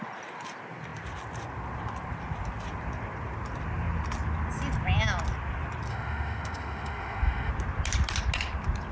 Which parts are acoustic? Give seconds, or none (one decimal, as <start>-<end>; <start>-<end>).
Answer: 0.0-5.9; 7.5-8.9